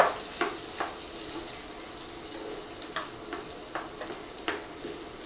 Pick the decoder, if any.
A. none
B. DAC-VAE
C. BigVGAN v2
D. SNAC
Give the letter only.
A